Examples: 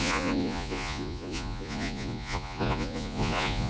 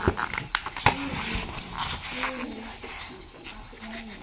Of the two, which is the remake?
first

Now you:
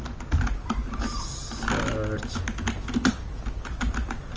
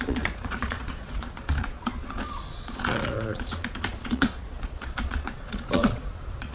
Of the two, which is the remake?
second